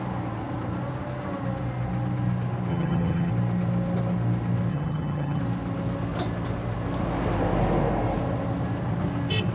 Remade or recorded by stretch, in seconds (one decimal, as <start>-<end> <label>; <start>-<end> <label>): 0.0-2.7 recorded; 2.7-3.3 remade; 3.3-4.7 recorded; 4.7-5.4 remade; 5.4-9.5 recorded